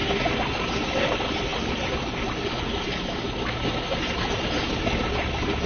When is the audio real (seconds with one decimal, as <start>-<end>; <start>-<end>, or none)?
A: 0.0-5.7